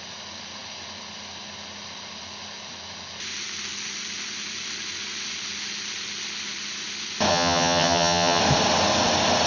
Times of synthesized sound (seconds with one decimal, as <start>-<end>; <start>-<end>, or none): 7.3-8.4